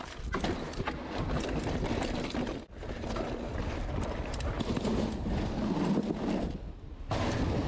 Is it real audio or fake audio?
real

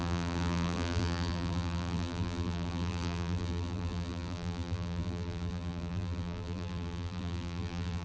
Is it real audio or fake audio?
fake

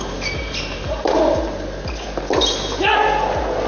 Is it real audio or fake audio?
real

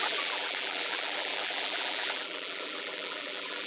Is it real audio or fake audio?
fake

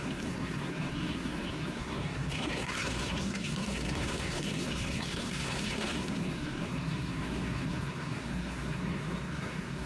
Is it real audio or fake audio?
fake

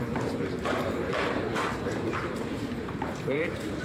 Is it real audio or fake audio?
fake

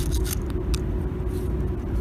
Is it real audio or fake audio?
real